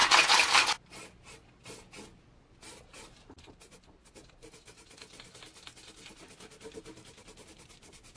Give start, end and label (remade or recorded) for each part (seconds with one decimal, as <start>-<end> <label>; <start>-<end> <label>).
0.0-8.2 recorded